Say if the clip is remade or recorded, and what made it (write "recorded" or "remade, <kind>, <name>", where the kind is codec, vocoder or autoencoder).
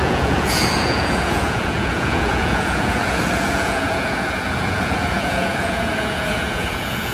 remade, vocoder, Vocos